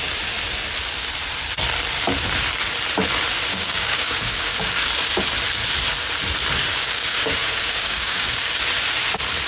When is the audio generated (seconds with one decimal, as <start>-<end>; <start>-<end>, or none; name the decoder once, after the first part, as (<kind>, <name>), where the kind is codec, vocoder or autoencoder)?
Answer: 3.5-4.9 (codec, DAC); 6.7-8.6